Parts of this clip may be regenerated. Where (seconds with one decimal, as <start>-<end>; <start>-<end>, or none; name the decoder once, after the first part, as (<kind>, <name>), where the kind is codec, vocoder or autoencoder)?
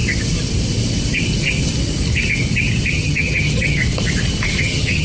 2.9-3.8 (vocoder, HiFi-GAN); 4.6-5.0